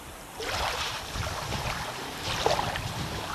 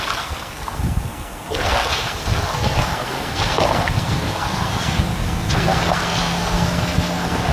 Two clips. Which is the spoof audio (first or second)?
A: second